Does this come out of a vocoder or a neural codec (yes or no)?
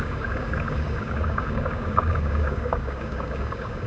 yes